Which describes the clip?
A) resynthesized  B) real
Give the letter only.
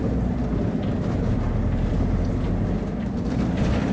B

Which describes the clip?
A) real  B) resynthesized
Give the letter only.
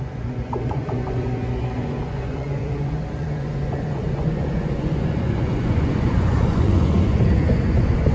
B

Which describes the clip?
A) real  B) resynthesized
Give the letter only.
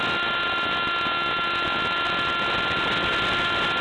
A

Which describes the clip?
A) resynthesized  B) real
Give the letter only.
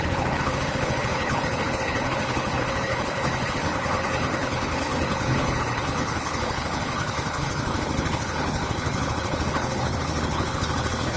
A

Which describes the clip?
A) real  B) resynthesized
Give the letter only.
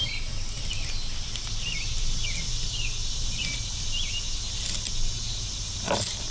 A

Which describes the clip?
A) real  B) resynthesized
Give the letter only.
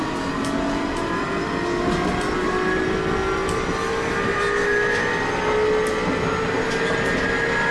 A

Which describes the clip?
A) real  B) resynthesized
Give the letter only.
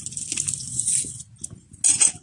A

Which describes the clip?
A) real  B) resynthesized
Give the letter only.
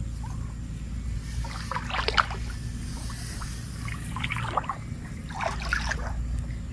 A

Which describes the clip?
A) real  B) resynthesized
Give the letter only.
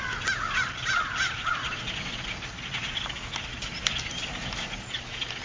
A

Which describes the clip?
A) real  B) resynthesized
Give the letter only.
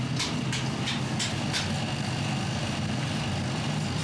A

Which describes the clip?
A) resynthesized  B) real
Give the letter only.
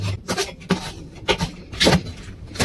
B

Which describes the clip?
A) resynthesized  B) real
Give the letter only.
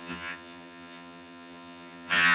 A